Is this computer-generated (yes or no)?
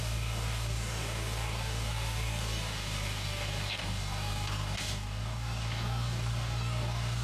yes